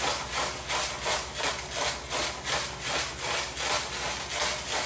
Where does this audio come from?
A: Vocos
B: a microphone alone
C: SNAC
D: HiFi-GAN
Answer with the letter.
B